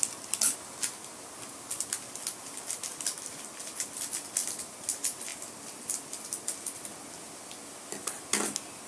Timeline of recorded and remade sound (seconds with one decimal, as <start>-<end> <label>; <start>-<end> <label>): 0.0-8.9 recorded